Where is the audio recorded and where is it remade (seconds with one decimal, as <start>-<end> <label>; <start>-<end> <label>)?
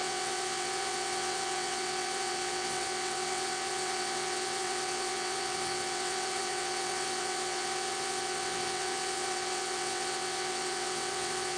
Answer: 0.0-11.6 remade